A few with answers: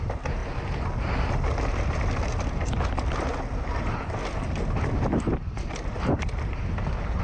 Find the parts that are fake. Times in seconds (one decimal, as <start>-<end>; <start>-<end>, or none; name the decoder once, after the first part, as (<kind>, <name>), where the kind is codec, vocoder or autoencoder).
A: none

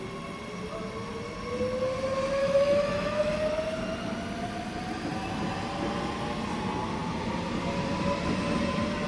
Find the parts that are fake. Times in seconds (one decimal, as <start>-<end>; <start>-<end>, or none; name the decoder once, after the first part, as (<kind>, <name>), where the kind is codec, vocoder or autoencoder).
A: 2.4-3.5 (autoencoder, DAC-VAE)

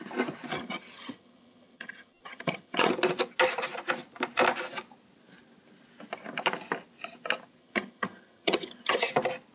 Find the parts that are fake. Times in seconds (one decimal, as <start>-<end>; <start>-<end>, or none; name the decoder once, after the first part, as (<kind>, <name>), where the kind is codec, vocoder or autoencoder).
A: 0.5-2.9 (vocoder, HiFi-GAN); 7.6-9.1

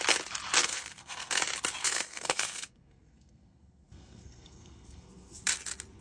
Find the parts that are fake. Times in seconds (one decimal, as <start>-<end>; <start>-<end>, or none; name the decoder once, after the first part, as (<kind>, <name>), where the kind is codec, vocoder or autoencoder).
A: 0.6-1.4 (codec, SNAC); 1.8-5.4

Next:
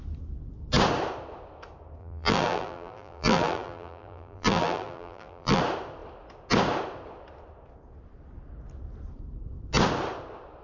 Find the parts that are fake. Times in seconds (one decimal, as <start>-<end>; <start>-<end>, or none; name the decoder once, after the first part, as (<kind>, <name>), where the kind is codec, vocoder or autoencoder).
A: 2.0-5.6 (vocoder, BigVGAN v2)